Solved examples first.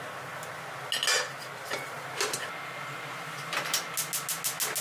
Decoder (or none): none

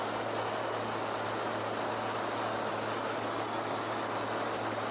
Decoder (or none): none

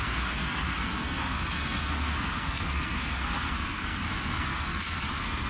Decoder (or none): codec, SNAC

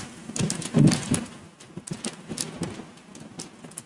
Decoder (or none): none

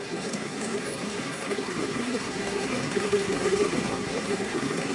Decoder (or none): codec, SNAC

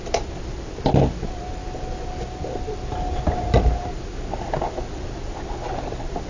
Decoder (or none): none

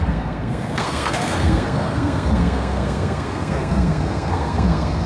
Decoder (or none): codec, SNAC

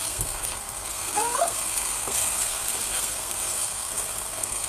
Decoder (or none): codec, SNAC